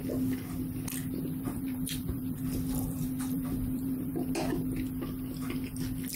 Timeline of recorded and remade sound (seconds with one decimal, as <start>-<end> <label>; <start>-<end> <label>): 0.0-1.0 recorded; 1.0-4.2 remade; 4.2-6.2 recorded